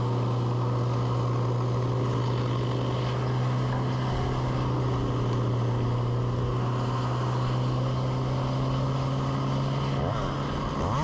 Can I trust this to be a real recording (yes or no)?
yes